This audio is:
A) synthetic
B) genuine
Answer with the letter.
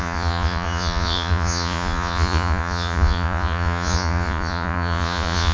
A